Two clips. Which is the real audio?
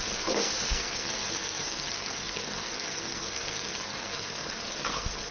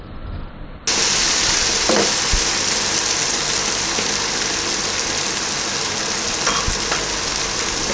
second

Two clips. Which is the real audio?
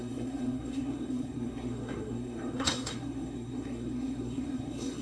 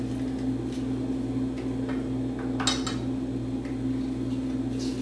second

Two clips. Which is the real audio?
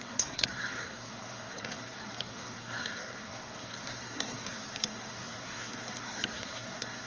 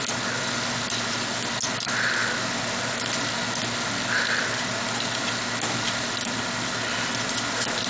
second